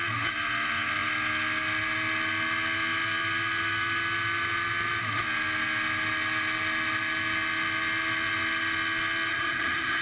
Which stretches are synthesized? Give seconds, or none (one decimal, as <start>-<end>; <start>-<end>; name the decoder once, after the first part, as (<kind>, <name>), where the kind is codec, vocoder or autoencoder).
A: 9.3-10.0 (vocoder, HiFi-GAN)